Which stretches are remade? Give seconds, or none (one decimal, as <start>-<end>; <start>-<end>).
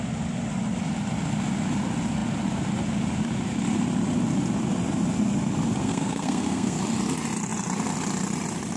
5.8-6.8